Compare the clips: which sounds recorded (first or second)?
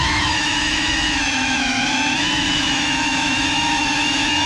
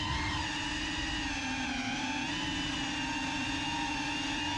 second